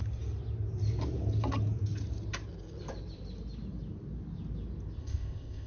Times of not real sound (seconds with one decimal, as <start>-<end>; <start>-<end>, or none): 5.0-5.7